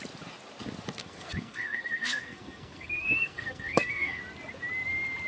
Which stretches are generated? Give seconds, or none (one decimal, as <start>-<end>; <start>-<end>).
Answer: 1.0-4.2